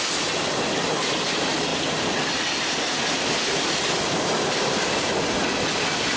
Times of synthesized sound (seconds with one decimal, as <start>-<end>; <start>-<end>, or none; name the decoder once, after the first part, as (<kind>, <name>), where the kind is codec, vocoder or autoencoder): none